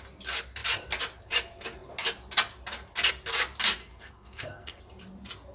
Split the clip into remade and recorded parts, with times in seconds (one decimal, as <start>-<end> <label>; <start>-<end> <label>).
0.0-3.8 recorded; 3.8-4.8 remade; 4.8-5.5 recorded